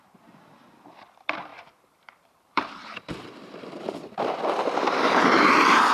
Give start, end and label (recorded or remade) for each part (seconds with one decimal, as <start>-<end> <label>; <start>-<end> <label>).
0.0-1.5 recorded; 1.5-2.7 remade; 2.7-5.9 recorded